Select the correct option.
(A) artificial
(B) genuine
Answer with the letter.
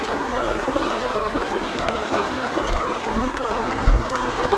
A